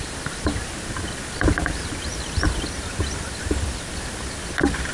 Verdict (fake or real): real